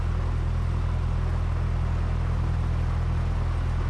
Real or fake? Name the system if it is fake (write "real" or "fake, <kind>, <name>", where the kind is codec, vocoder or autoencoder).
real